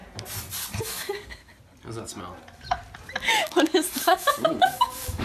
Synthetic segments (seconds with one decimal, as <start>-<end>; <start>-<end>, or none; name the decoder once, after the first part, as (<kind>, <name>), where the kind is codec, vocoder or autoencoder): 0.8-1.5 (codec, DAC); 3.2-5.2